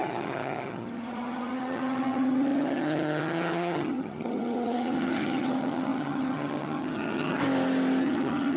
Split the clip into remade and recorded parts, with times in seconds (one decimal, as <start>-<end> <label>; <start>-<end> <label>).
0.0-7.4 remade; 7.4-8.0 recorded; 8.0-8.6 remade

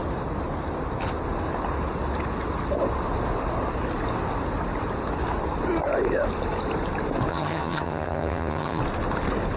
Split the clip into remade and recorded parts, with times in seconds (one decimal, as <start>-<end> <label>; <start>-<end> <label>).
0.0-7.3 recorded; 7.3-8.8 remade; 8.8-9.6 recorded